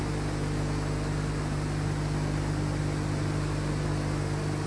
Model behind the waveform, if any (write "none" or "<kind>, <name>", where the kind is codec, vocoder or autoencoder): none